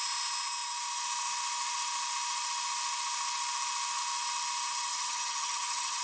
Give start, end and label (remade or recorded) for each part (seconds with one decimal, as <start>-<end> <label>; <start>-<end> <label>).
0.0-4.9 recorded; 4.9-6.0 remade